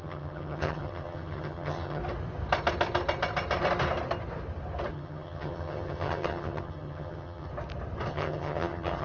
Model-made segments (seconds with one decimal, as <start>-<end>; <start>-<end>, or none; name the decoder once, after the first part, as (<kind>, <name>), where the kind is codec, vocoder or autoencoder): 0.0-2.0 (vocoder, HiFi-GAN); 4.9-7.5; 8.1-9.0